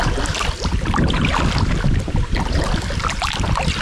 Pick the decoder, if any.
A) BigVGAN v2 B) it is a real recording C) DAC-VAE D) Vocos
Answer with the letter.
B